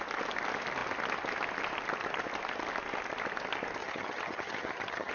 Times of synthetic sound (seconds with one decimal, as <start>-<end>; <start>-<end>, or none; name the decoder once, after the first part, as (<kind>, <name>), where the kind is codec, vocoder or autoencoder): 3.8-5.1 (vocoder, HiFi-GAN)